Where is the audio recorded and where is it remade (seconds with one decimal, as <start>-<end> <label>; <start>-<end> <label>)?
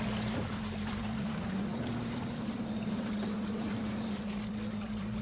0.0-5.2 remade